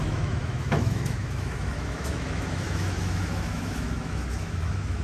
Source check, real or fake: fake